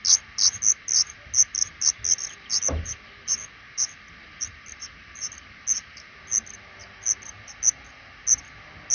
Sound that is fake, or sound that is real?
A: real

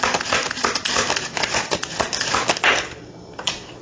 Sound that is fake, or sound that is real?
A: real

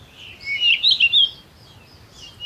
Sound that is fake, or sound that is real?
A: real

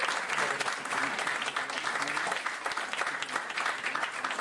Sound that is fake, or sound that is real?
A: real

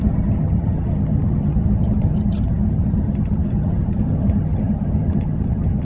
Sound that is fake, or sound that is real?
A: fake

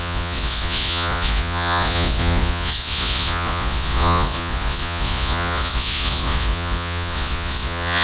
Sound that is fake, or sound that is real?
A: fake